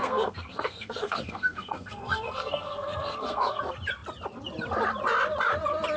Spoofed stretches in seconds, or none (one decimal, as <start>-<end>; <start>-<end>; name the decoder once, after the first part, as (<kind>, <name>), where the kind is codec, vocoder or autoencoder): 0.0-3.6 (codec, SNAC)